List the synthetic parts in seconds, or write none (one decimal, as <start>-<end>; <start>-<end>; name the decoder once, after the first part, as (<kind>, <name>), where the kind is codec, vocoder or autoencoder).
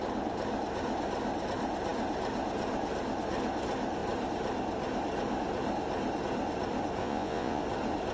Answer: 7.0-7.6 (vocoder, Vocos)